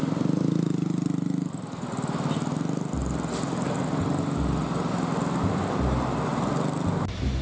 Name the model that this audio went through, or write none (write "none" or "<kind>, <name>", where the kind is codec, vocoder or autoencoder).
none